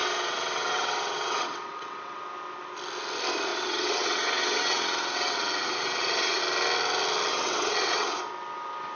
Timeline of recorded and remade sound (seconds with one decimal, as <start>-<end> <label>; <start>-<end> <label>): 0.0-2.2 remade; 2.2-3.5 recorded; 3.5-6.4 remade; 6.4-7.3 recorded; 7.3-8.2 remade; 8.2-9.0 recorded